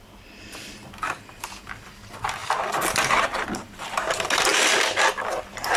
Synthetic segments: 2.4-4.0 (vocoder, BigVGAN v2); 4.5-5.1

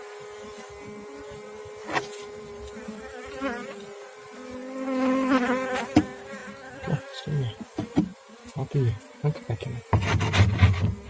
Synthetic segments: 1.8-2.4 (vocoder, BigVGAN v2); 6.4-7.0; 8.1-9.9

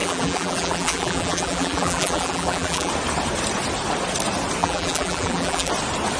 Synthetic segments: 0.0-2.9 (vocoder, BigVGAN v2); 4.6-5.7

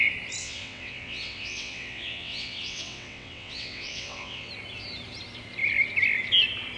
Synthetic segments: 0.4-4.5 (vocoder, WaveNeXt)